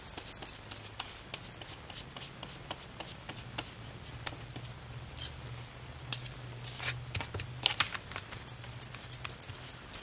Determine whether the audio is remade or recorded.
recorded